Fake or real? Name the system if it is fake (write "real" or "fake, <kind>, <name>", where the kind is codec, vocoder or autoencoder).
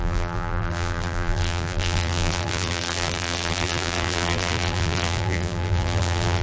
fake, vocoder, BigVGAN v2